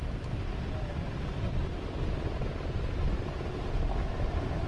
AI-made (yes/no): no